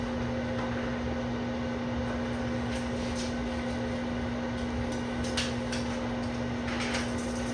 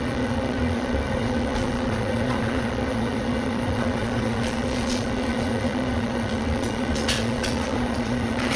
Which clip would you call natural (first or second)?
first